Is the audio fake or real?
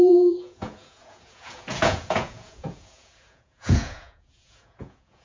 fake